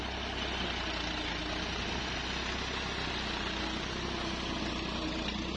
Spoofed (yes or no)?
no